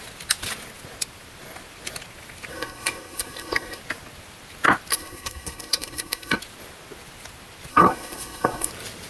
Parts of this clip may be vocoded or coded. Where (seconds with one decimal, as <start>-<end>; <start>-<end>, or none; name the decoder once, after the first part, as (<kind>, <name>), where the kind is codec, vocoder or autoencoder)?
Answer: 2.5-3.8 (codec, SNAC); 4.9-6.4; 7.7-8.7